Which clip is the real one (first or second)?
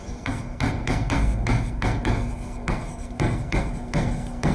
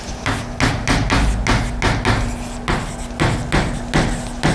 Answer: second